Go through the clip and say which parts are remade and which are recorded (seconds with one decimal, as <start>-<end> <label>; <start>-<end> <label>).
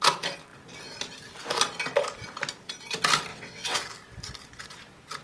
0.0-3.3 recorded; 3.3-3.8 remade; 3.8-5.2 recorded